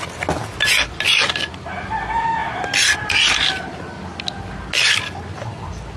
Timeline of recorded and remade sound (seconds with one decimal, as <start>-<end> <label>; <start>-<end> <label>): 0.0-6.0 recorded